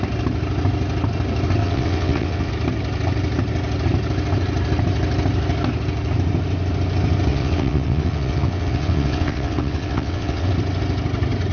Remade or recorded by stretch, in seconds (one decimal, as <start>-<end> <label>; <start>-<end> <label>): 0.0-1.6 recorded; 1.6-2.5 remade; 2.5-7.3 recorded; 7.3-10.5 remade; 10.5-11.5 recorded